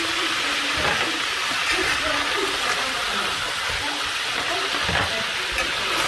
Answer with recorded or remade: recorded